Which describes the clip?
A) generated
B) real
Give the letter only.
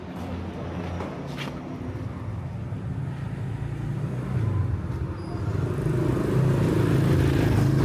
B